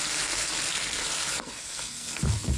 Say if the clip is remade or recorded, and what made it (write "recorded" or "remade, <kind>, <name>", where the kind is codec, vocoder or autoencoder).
remade, codec, SNAC